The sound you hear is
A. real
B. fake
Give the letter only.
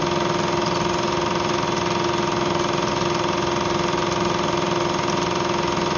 A